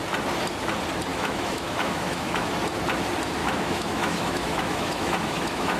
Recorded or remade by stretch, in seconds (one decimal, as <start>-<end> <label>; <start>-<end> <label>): 0.0-1.1 recorded; 1.1-2.5 remade; 2.5-3.4 recorded; 3.4-5.8 remade